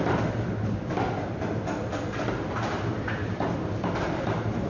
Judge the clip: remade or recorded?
remade